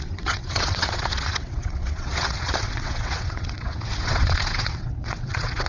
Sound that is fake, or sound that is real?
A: fake